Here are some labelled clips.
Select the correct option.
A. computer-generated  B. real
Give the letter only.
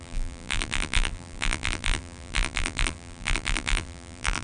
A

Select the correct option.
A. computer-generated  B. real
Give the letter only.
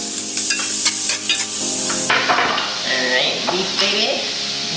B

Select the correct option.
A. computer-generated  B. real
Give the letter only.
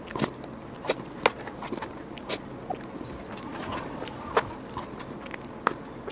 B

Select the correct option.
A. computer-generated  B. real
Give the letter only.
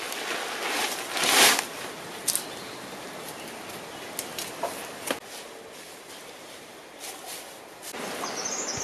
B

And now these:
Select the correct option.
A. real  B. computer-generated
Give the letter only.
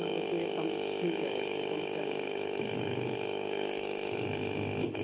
B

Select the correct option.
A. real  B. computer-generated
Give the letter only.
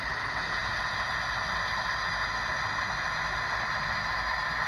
A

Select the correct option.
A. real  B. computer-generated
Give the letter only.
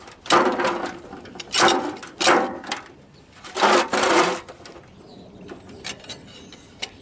B